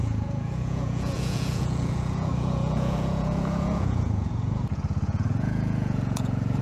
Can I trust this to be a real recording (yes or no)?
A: no